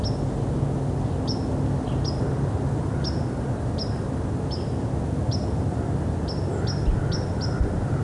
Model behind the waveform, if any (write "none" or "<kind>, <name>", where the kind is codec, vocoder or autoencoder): none